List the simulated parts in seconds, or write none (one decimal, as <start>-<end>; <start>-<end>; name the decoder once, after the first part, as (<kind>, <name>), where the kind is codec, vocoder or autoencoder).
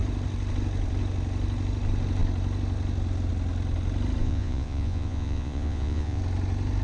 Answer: 4.2-6.2 (vocoder, Vocos)